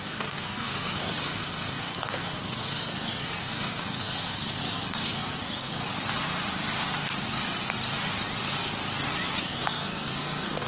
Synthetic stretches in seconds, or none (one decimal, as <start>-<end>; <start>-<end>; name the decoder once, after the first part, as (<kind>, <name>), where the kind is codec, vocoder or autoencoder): 0.0-5.8 (codec, SNAC); 9.4-10.7